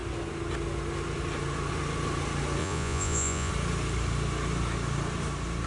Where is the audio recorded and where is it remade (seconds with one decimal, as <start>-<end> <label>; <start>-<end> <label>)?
0.0-2.6 recorded; 2.6-3.5 remade; 3.5-5.7 recorded